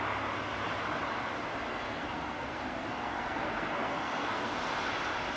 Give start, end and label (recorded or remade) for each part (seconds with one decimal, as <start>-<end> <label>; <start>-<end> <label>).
0.0-1.7 recorded; 1.7-4.9 remade; 4.9-5.4 recorded